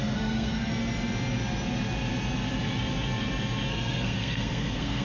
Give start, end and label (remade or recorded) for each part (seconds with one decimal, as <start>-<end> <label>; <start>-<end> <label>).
0.0-0.7 remade; 0.7-3.7 recorded; 3.7-5.0 remade